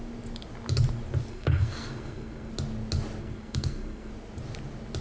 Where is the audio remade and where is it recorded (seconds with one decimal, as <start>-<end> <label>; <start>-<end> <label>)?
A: 0.0-1.3 recorded; 1.3-2.5 remade; 2.5-3.2 recorded; 3.2-4.1 remade; 4.1-5.0 recorded